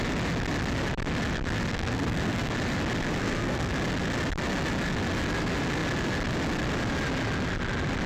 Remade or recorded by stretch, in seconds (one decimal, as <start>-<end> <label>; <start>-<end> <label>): 0.0-1.7 recorded; 1.7-2.5 remade; 2.5-3.2 recorded; 3.2-3.7 remade; 3.7-8.1 recorded